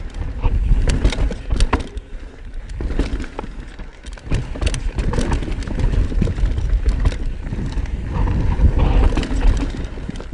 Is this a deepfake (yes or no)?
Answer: no